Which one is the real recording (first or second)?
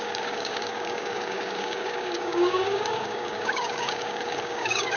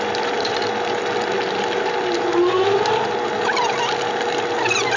second